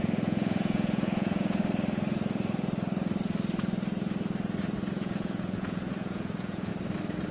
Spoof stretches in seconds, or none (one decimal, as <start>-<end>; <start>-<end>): 0.0-1.6; 4.9-6.7